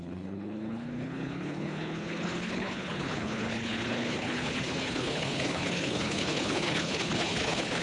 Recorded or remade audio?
remade